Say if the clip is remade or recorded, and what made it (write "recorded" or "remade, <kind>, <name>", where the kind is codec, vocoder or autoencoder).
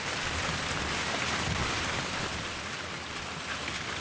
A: recorded